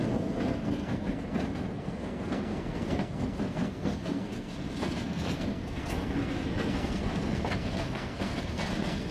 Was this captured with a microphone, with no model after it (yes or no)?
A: no